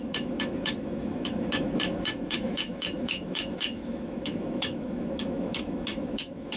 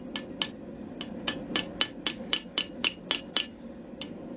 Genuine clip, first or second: second